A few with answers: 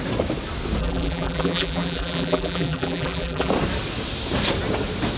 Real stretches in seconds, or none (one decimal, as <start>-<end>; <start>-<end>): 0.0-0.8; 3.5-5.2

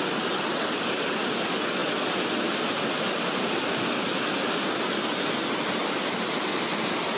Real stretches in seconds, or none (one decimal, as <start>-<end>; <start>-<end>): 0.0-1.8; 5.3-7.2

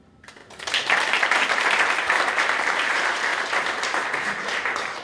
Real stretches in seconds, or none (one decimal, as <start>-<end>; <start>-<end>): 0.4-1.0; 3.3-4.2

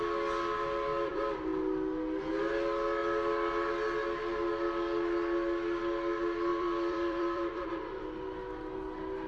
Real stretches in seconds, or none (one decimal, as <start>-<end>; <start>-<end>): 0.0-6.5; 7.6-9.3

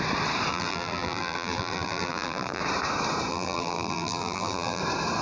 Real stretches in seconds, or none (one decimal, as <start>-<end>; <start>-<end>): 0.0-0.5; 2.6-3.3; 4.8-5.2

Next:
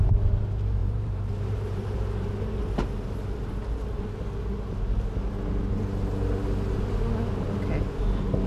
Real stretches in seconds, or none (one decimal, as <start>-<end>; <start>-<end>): 0.0-0.8; 1.8-8.5

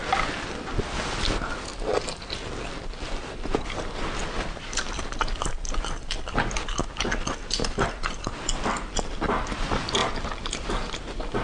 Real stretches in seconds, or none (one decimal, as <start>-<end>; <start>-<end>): 0.0-10.0; 11.0-11.4